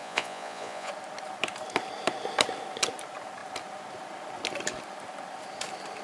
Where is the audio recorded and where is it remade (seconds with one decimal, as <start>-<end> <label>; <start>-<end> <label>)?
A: 0.0-0.9 remade; 0.9-6.0 recorded